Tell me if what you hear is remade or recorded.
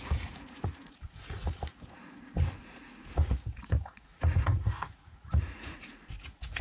remade